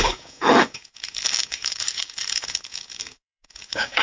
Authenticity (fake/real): fake